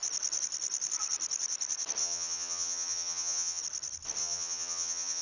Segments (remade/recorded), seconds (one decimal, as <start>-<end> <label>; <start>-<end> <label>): 0.0-2.0 recorded; 2.0-3.6 remade; 3.6-4.2 recorded; 4.2-5.2 remade

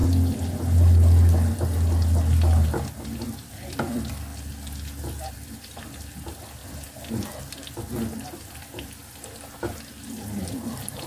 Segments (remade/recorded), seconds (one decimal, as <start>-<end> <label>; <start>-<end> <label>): 0.0-3.2 recorded; 3.2-4.3 remade; 4.3-5.3 recorded; 5.3-6.6 remade; 6.6-7.1 recorded; 7.1-9.0 remade; 9.0-10.0 recorded; 10.0-11.1 remade